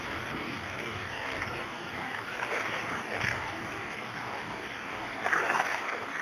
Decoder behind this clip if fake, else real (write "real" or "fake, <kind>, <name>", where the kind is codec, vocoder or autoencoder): fake, codec, DAC